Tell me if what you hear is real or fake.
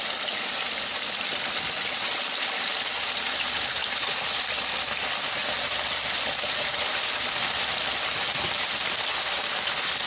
fake